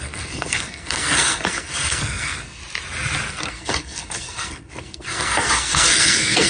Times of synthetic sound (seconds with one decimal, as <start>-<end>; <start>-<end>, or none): 0.0-2.6; 3.3-6.5